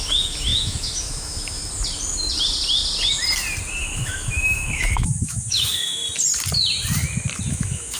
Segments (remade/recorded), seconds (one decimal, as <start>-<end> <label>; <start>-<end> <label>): 0.0-1.6 remade; 1.6-3.8 recorded; 3.8-6.0 remade; 6.0-7.5 recorded; 7.5-8.0 remade